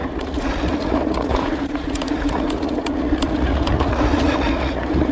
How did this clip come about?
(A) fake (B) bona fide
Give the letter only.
A